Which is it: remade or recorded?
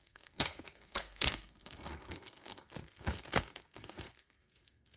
remade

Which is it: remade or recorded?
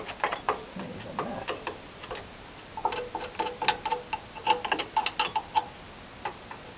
recorded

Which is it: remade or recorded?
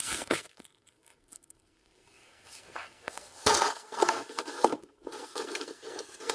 remade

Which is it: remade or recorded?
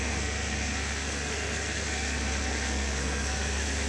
remade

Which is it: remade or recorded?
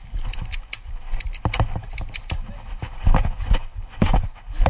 recorded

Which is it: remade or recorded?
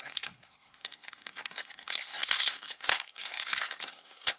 remade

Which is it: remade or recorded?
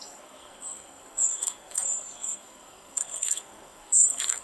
remade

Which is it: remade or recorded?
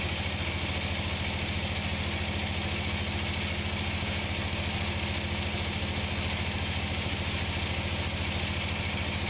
recorded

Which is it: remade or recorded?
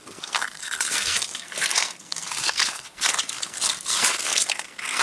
remade